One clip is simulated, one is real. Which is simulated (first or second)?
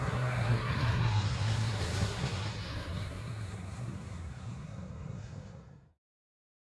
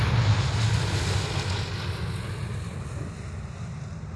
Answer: first